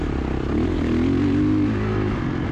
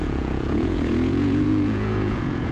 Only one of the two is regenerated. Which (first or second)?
second